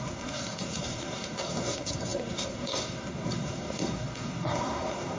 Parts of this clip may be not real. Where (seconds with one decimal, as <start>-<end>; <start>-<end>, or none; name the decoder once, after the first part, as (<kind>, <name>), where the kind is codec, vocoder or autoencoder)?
0.0-5.2 (codec, SNAC)